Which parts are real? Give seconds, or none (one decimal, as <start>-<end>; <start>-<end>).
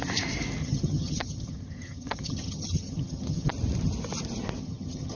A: 0.0-0.6; 3.5-4.6